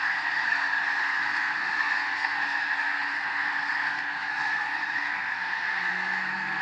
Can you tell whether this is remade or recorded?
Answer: remade